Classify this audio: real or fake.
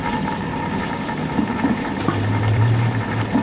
fake